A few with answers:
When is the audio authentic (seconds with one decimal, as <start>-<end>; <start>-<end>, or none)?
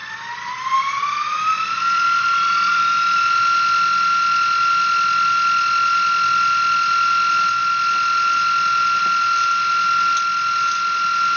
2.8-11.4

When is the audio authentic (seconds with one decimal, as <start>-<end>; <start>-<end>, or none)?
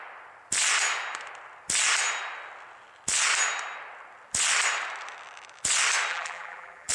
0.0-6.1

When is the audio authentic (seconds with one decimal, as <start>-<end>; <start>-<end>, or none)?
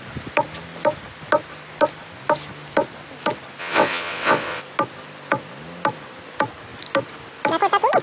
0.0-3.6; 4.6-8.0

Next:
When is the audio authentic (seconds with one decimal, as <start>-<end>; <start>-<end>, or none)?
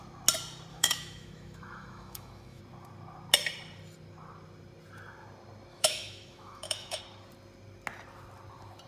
0.0-0.7; 2.6-5.7; 7.0-8.9